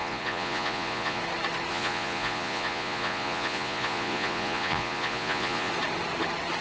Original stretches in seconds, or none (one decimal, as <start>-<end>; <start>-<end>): 1.2-1.7; 5.7-6.6